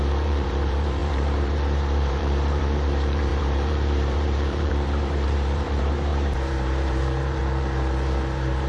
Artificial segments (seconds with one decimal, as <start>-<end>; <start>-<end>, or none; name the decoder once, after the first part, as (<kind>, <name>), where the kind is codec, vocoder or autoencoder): 0.0-8.7 (vocoder, BigVGAN v2)